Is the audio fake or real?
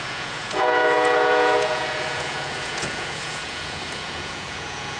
fake